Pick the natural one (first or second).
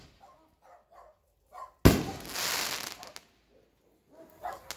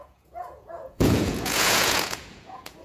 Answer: first